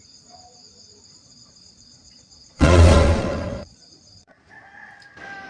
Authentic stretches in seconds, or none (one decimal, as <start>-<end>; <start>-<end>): 0.0-1.2; 4.5-5.5